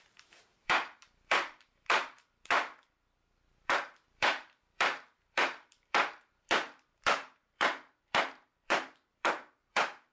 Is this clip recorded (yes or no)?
no